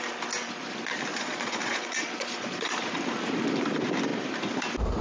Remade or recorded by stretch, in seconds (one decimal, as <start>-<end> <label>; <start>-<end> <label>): 0.0-1.1 recorded; 1.1-3.0 remade; 3.0-5.0 recorded